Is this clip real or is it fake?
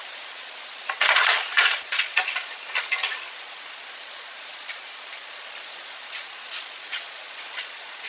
fake